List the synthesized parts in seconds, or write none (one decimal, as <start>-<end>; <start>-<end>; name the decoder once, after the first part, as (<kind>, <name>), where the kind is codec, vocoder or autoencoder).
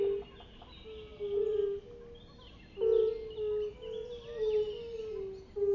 none